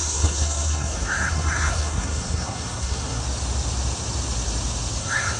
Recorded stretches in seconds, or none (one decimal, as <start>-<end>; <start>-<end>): 3.2-5.0